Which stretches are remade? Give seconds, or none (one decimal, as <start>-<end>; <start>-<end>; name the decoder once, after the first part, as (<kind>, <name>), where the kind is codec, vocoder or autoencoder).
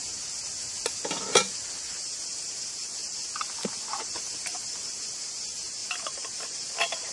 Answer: 5.8-7.1 (vocoder, BigVGAN v2)